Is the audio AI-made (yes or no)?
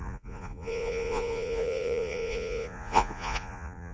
yes